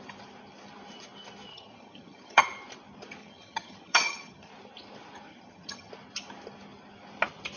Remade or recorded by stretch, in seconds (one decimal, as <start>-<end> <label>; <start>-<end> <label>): 0.0-1.5 recorded; 1.5-2.4 remade; 2.4-3.2 recorded; 3.2-4.5 remade; 4.5-5.3 recorded; 5.3-5.9 remade; 5.9-7.6 recorded